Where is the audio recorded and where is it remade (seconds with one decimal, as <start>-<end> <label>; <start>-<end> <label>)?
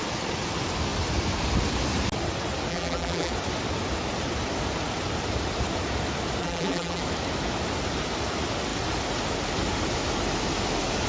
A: 0.0-2.7 recorded; 2.7-3.3 remade; 3.3-6.4 recorded; 6.4-7.0 remade; 7.0-11.1 recorded